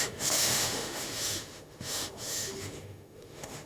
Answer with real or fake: fake